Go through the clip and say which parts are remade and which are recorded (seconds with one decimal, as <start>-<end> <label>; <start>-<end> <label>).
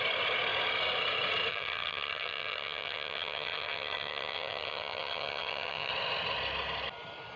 0.0-1.5 recorded; 1.5-5.9 remade; 5.9-7.4 recorded